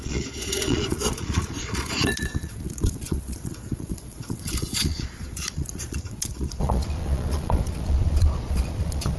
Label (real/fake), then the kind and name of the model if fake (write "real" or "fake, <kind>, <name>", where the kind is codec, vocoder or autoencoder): fake, vocoder, Vocos